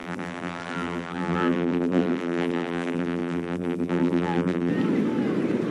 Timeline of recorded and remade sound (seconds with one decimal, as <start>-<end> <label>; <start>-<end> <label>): 0.0-4.7 remade; 4.7-5.7 recorded